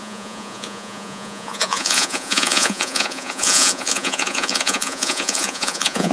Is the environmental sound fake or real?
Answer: fake